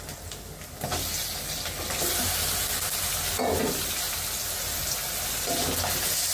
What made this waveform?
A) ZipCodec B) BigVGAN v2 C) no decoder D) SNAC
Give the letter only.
C